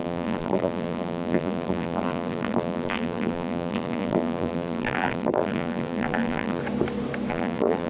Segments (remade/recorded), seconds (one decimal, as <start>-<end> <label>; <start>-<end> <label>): 0.0-6.6 remade; 6.6-7.3 recorded; 7.3-7.9 remade